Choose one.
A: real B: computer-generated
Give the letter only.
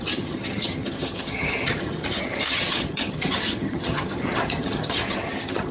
B